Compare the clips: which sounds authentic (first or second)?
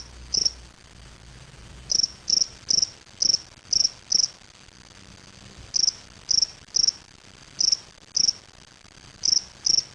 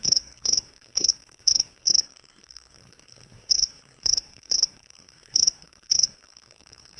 first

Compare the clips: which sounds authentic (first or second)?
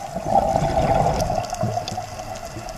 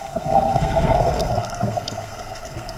first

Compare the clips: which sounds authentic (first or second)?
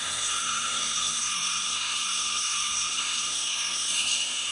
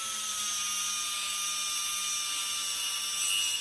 second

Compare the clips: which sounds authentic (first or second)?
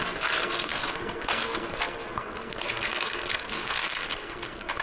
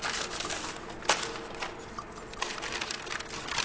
second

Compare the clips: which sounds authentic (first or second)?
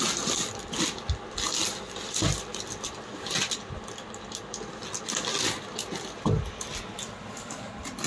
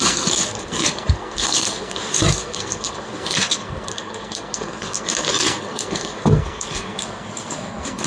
first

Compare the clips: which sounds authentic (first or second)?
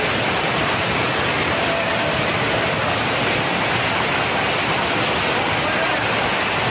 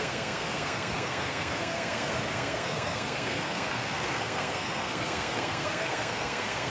first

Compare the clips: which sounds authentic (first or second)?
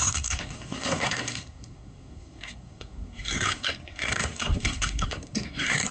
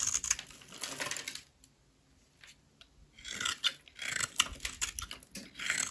second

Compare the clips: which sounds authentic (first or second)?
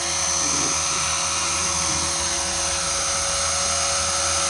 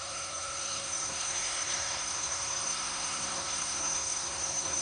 first